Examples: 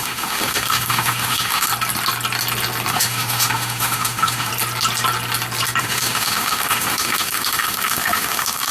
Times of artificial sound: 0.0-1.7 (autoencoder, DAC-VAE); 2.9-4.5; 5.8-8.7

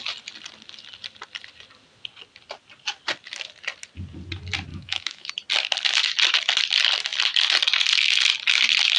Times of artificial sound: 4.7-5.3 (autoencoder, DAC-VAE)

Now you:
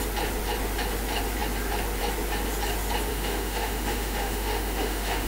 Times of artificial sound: 3.1-5.3 (autoencoder, DAC-VAE)